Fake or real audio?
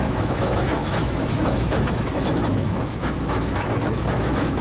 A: fake